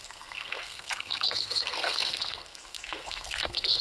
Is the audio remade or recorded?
remade